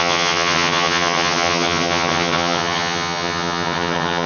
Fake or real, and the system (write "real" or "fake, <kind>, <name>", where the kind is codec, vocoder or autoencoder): fake, vocoder, HiFi-GAN